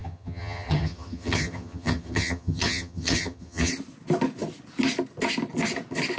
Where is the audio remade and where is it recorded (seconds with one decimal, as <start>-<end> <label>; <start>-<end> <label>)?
0.0-3.7 remade; 3.7-6.2 recorded